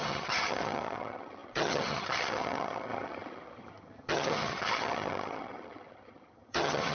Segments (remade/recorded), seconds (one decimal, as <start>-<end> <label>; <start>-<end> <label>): 0.0-6.9 remade